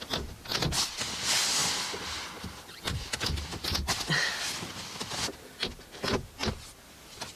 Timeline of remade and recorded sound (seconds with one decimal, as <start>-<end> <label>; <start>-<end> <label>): 0.0-7.4 recorded